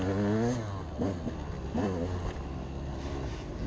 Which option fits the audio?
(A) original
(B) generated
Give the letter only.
A